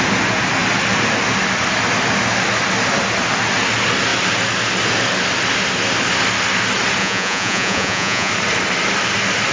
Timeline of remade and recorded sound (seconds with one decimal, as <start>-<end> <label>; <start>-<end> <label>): 0.0-7.0 recorded; 7.0-8.3 remade; 8.3-9.5 recorded